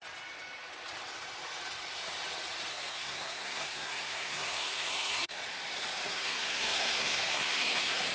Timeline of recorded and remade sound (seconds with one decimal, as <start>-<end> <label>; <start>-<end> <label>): 0.0-2.7 recorded; 2.7-5.4 remade; 5.4-6.1 recorded; 6.1-8.1 remade